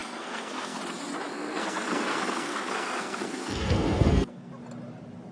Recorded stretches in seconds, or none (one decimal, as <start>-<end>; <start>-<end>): 0.8-1.3; 4.5-5.3